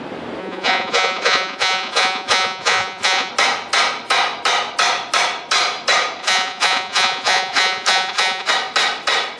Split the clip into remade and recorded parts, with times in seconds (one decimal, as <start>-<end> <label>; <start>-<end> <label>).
0.0-0.4 recorded; 0.4-3.3 remade; 3.3-6.2 recorded; 6.2-8.5 remade; 8.5-9.4 recorded